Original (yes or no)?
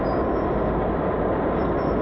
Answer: yes